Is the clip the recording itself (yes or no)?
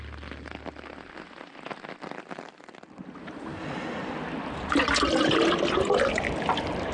yes